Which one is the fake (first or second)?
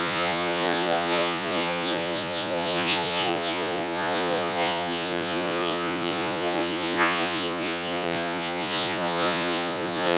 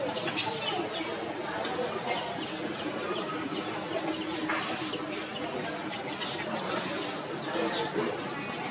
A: first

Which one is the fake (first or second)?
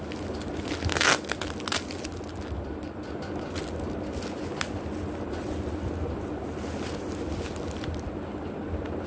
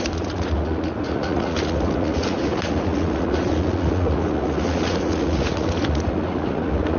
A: second